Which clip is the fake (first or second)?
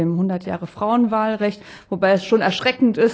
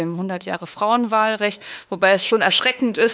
second